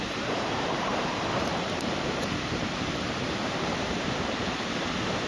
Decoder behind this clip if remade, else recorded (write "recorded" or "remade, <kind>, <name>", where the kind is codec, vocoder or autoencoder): remade, vocoder, BigVGAN v2